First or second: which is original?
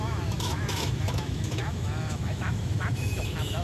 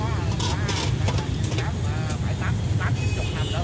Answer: second